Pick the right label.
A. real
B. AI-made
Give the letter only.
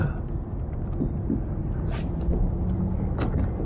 A